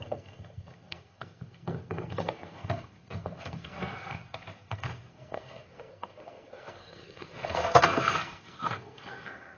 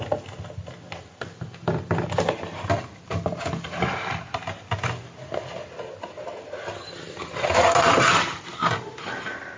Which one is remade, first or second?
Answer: first